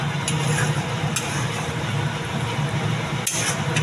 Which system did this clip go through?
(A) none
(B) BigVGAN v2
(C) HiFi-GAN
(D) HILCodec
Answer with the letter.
A